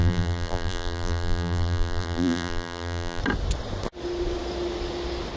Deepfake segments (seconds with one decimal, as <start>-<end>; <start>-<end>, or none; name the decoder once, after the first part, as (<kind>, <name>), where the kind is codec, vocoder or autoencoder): 0.0-3.2 (vocoder, BigVGAN v2)